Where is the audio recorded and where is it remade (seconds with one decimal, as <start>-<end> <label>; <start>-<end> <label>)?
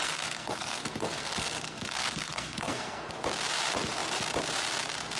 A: 0.0-3.1 remade; 3.1-5.2 recorded